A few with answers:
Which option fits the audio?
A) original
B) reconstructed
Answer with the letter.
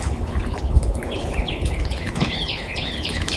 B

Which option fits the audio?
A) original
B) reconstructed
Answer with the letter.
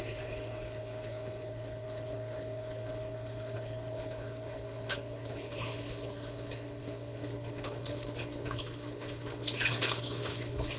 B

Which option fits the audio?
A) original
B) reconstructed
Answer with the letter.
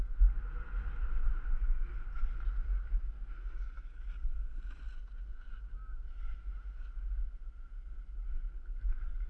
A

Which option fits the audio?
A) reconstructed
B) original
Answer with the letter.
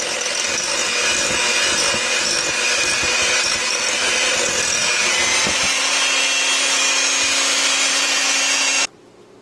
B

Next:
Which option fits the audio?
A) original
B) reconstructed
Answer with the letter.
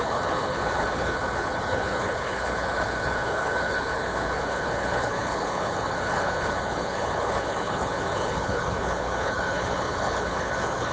B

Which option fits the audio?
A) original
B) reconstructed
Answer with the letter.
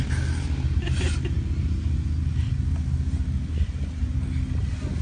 A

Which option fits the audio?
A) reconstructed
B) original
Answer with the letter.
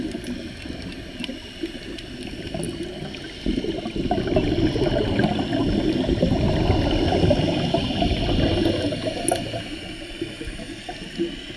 B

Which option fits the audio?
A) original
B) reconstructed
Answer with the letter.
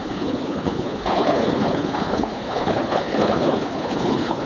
B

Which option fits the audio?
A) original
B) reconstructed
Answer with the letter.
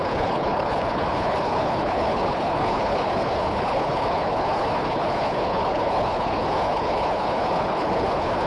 B